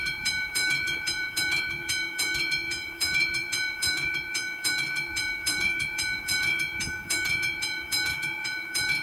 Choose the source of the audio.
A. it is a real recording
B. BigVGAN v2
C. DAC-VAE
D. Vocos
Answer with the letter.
D